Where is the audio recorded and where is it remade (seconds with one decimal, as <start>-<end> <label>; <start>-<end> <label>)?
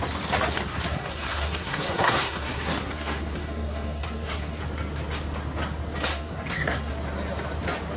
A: 0.0-0.7 recorded; 0.7-4.6 remade; 4.6-6.1 recorded; 6.1-6.9 remade; 6.9-8.0 recorded